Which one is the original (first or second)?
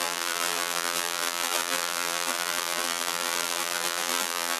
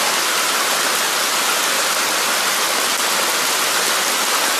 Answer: second